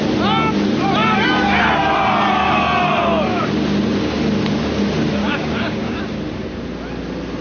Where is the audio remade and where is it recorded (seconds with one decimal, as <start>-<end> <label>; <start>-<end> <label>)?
0.0-5.2 recorded; 5.2-6.0 remade; 6.0-7.4 recorded